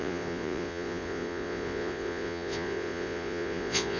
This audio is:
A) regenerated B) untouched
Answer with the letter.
A